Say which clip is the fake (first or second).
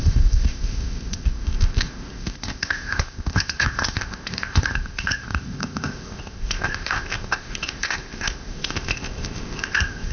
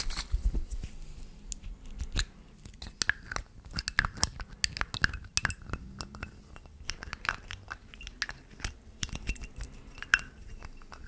first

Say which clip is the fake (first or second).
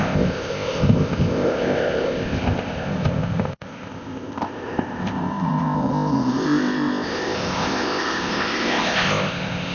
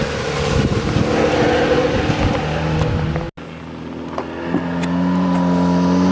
first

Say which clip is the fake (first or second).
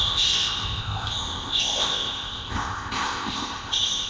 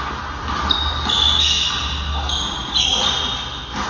first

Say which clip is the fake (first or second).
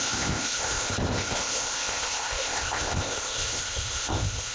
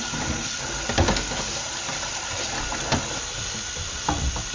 first